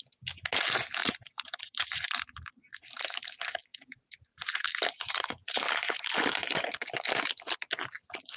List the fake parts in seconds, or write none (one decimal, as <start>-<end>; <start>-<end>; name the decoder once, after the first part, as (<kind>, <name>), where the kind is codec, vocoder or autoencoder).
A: 1.0-3.0 (vocoder, BigVGAN v2); 3.7-6.0